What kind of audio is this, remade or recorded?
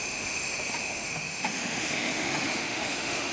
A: remade